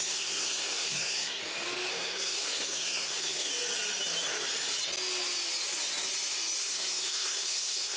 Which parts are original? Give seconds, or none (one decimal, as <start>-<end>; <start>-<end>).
1.4-1.9; 3.5-6.6